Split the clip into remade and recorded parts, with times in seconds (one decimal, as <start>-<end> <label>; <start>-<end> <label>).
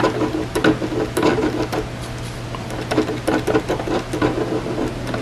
0.0-5.2 recorded